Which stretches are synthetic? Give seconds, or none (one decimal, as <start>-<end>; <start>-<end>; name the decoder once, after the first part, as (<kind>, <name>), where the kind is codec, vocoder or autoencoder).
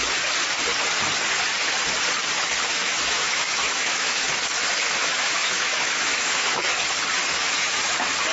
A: 2.7-6.7 (autoencoder, DAC-VAE); 7.2-7.9